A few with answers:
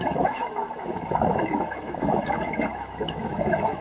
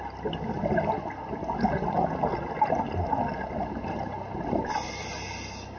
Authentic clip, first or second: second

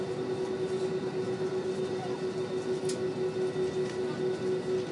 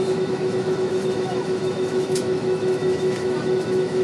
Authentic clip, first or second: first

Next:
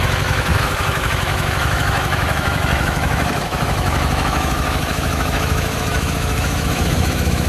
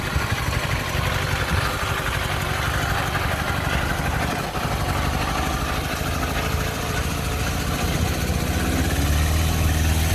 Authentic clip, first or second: second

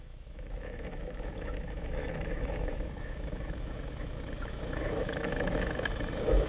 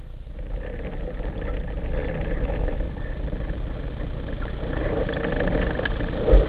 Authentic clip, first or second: second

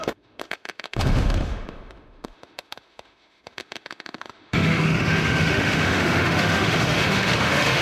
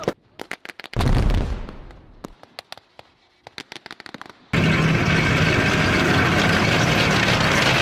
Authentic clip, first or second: second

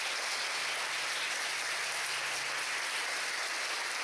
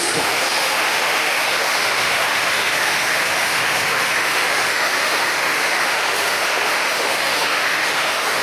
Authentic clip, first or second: first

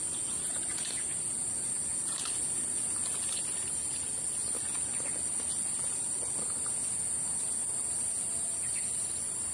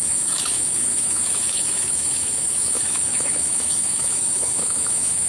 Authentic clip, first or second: first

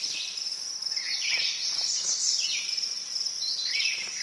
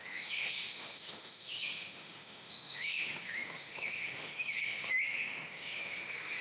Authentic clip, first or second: first